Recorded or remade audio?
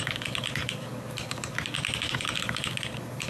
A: remade